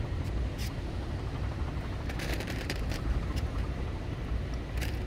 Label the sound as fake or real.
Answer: fake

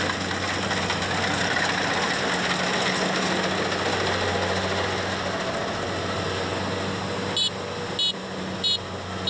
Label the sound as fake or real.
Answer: real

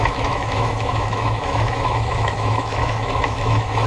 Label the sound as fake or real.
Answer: fake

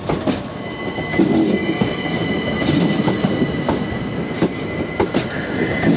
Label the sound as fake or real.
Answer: real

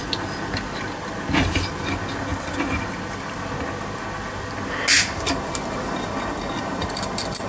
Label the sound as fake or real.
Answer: real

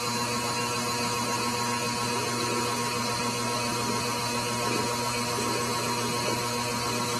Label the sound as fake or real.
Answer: real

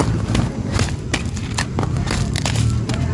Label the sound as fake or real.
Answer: real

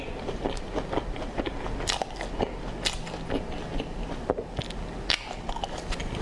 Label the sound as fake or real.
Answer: real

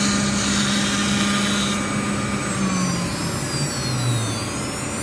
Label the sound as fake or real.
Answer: real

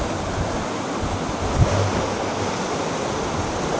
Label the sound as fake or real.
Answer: real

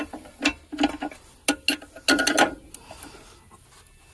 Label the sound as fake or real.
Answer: real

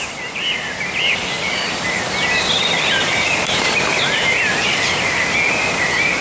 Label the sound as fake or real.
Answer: real